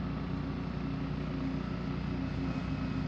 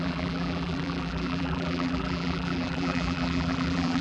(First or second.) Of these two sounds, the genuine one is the first